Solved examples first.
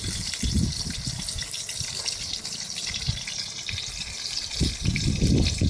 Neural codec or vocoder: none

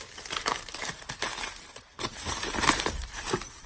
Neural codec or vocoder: vocoder, BigVGAN v2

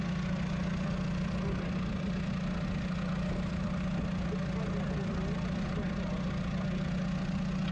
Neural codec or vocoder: none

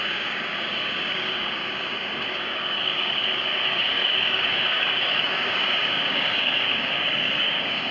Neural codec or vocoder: codec, DAC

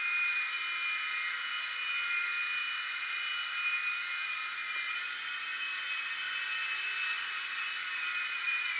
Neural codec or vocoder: none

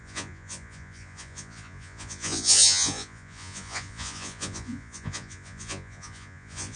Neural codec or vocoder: vocoder, Vocos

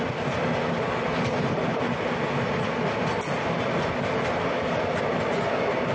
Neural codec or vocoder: none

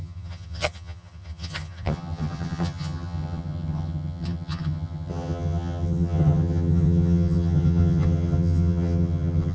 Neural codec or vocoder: vocoder, HiFi-GAN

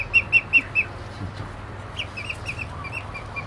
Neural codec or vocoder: none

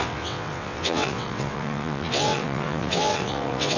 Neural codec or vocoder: vocoder, WaveNeXt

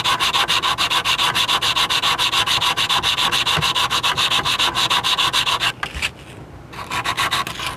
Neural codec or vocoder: none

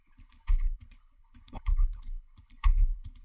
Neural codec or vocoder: codec, HILCodec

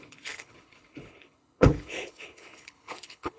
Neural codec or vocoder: codec, HILCodec